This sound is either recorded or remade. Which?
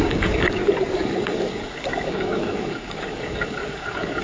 remade